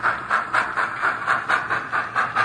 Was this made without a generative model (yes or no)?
yes